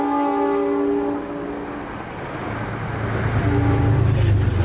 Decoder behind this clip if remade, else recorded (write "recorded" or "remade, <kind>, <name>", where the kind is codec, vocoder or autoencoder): recorded